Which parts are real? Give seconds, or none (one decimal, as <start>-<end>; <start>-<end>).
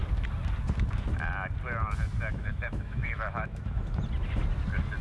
0.0-2.3; 4.0-5.0